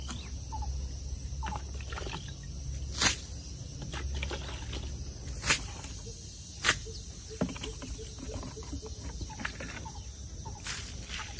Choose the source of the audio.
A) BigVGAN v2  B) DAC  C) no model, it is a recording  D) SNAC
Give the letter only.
C